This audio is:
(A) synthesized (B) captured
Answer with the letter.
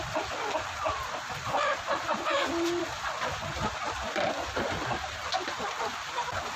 A